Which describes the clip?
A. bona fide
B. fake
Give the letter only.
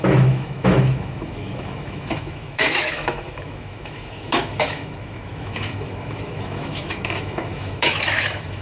B